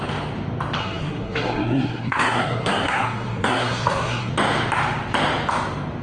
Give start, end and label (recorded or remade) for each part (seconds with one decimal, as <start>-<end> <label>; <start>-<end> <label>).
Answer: 0.0-0.8 recorded; 0.8-4.3 remade; 4.3-6.0 recorded